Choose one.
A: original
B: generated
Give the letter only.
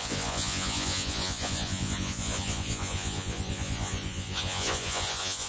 B